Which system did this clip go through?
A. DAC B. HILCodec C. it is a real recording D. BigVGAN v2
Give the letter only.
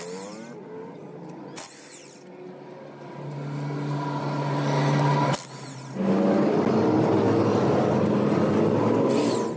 C